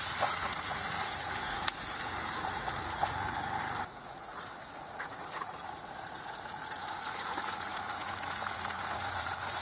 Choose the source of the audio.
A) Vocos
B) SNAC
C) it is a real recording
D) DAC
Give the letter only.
A